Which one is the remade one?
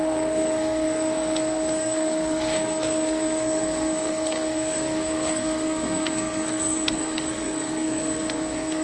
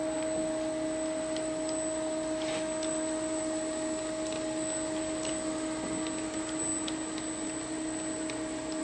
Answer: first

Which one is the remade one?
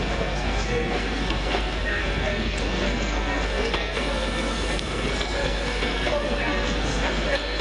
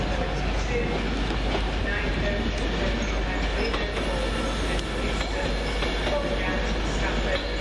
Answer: first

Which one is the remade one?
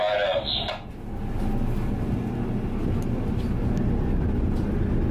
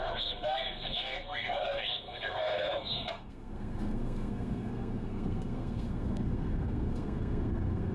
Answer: second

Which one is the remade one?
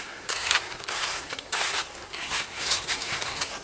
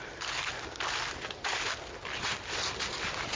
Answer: first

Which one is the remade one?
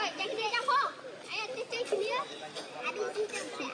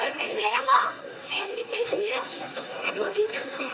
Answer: second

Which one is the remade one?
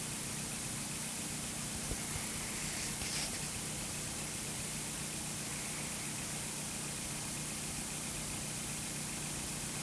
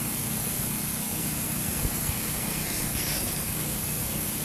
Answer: second